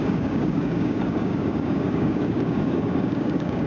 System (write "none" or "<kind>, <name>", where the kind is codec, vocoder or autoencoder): codec, DAC